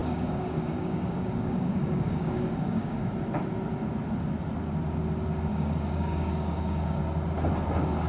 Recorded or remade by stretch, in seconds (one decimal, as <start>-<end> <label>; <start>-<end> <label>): 0.0-3.1 remade; 3.1-5.5 recorded; 5.5-7.0 remade; 7.0-8.1 recorded